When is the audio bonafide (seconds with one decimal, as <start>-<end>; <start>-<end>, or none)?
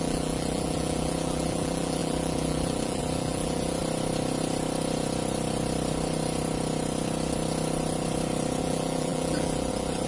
3.8-8.6